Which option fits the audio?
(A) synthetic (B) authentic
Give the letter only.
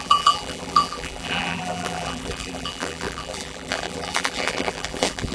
A